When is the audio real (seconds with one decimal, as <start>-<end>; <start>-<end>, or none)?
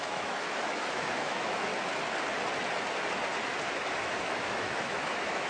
1.7-4.0